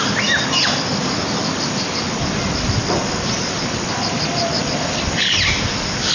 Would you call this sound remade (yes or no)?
no